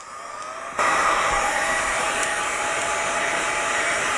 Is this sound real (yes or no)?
no